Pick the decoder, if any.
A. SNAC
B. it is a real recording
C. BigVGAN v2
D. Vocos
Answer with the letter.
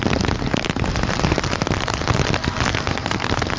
B